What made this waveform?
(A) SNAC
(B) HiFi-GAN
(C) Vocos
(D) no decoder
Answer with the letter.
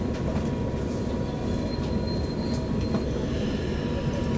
D